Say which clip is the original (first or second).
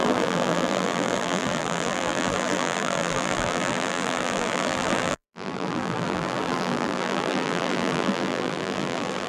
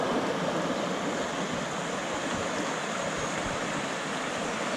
second